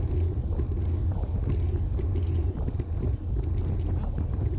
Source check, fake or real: real